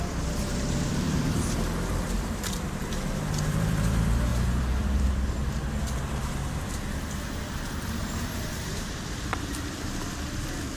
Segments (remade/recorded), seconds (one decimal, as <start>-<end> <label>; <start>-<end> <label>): 0.0-10.8 remade